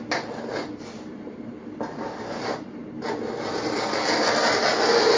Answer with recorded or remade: recorded